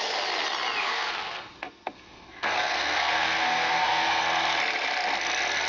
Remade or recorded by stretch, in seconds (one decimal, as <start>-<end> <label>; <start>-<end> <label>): 0.0-0.8 recorded; 0.8-4.2 remade; 4.2-5.7 recorded